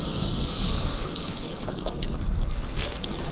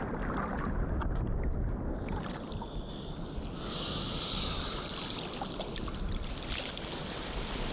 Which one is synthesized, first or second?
first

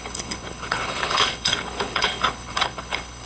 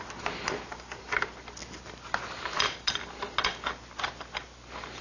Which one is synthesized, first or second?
first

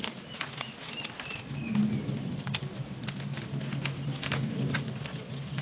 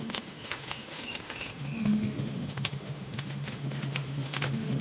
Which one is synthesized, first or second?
second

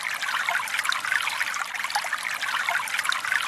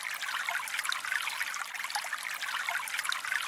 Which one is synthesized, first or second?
first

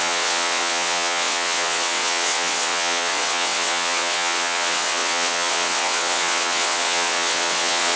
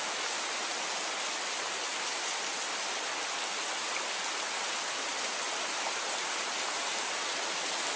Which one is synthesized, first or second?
first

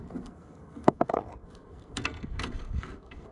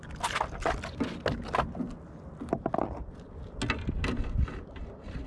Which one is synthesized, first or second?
first